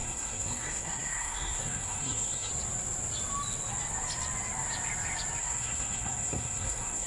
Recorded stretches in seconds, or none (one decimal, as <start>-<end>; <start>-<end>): 2.5-5.4